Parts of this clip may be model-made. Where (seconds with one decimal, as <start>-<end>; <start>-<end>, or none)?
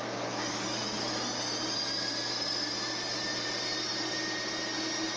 none